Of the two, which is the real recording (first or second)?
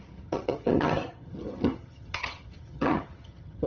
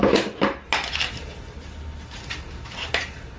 second